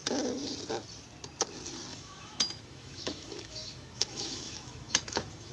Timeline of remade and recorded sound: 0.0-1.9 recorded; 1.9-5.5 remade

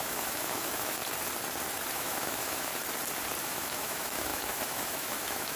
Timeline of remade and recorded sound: 0.0-1.0 remade; 1.0-1.9 recorded; 1.9-2.7 remade; 2.7-3.4 recorded; 3.4-5.6 remade

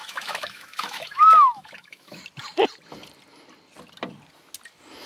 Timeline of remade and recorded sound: 0.0-2.2 remade; 2.2-5.1 recorded

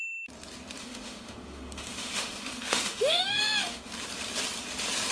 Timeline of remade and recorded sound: 0.0-0.8 recorded; 0.8-3.9 remade; 3.9-5.1 recorded

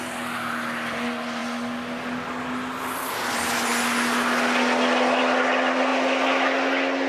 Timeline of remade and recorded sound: 0.0-7.1 recorded

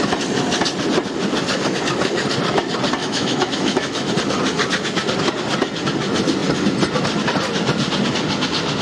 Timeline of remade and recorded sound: 0.0-3.0 recorded; 3.0-4.1 remade; 4.1-8.8 recorded

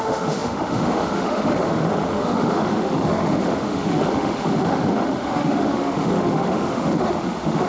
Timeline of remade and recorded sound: 0.0-7.7 remade

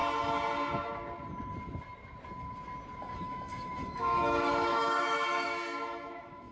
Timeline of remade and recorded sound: 0.0-3.0 recorded; 3.0-6.5 remade